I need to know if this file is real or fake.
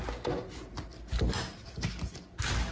real